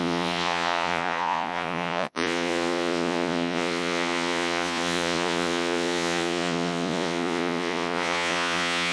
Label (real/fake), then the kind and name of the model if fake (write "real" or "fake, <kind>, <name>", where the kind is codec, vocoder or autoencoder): fake, vocoder, Vocos